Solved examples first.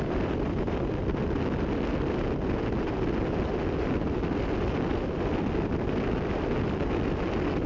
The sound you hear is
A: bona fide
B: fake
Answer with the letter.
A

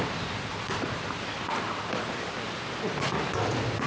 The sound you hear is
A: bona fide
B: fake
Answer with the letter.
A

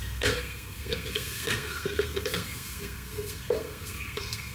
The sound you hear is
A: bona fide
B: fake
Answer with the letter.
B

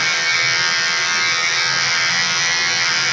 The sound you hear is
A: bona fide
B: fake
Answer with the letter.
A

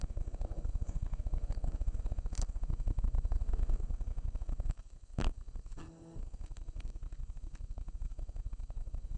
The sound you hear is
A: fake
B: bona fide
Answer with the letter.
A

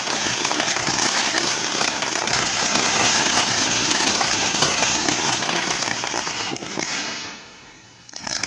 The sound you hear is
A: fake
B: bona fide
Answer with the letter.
A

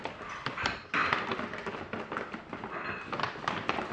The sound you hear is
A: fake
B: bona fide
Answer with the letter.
B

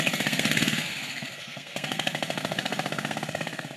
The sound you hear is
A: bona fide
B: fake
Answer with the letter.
B